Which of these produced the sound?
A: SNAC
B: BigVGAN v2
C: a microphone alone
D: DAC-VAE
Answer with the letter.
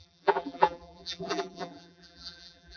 B